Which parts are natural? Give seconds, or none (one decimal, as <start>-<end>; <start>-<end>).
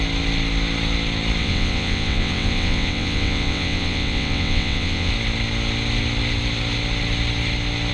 0.0-1.4; 5.1-7.9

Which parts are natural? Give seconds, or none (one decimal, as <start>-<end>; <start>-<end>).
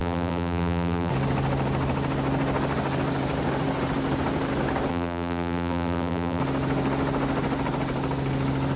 1.1-4.9; 6.4-8.8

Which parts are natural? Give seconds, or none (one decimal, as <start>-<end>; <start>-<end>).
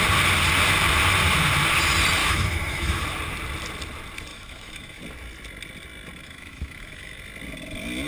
0.0-2.2; 3.0-4.3; 5.0-6.2; 7.2-8.1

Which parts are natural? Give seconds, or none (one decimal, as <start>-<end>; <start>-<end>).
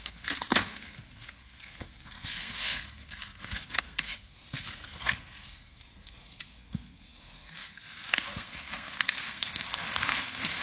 none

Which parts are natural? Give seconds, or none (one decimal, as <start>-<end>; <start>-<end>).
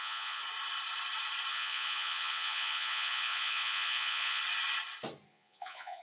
0.4-1.5; 4.4-5.3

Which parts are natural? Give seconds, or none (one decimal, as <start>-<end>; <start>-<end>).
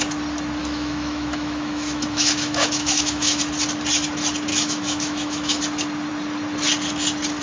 0.0-0.6; 3.4-4.5; 5.6-7.4